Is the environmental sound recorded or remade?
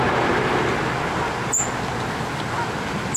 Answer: recorded